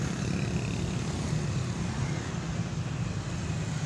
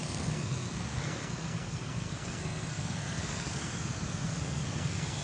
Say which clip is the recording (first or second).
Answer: first